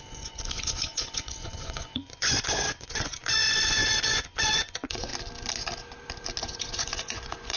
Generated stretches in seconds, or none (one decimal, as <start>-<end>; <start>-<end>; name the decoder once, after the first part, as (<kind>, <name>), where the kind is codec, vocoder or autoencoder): 0.0-5.1 (vocoder, Vocos); 6.4-7.6